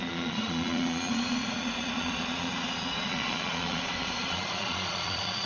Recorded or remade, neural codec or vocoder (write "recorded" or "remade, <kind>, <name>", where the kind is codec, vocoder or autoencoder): remade, vocoder, Vocos